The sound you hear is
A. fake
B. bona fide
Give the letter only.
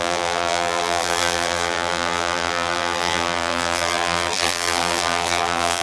A